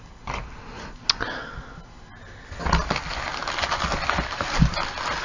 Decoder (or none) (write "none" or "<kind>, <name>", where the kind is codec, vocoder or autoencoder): none